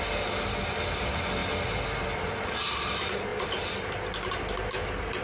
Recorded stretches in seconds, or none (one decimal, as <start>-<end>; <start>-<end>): 0.0-5.2